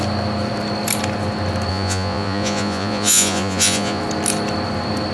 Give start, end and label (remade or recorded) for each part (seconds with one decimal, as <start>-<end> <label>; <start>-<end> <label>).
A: 0.0-1.7 recorded; 1.7-4.0 remade; 4.0-5.1 recorded